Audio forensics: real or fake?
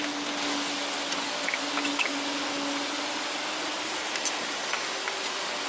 real